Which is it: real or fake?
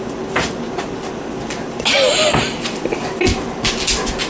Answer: real